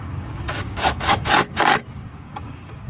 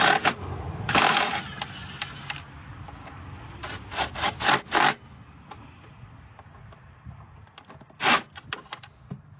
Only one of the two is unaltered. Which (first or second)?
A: second